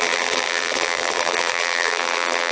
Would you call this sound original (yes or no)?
no